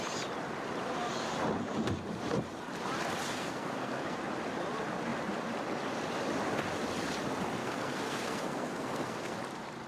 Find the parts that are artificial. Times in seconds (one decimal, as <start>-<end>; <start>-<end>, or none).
3.3-4.2; 7.6-9.4